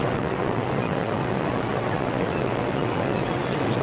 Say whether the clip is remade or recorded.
remade